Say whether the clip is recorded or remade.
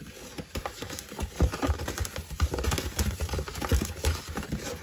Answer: remade